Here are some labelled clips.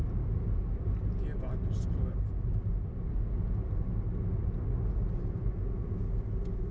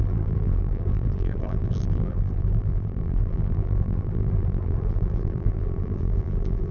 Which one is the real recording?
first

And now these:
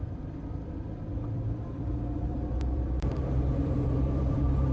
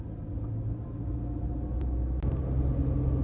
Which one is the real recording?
second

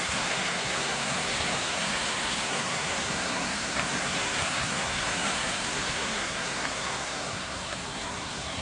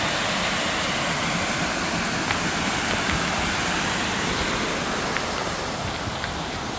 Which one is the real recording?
second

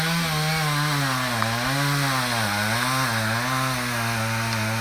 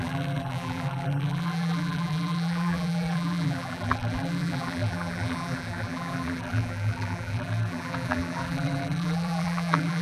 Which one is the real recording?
first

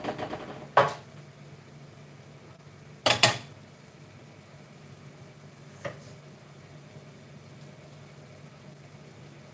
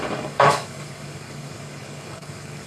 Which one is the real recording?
first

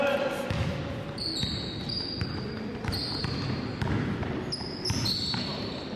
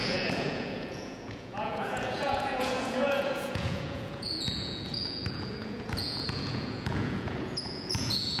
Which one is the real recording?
first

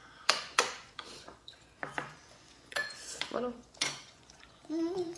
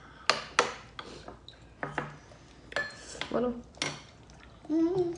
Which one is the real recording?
second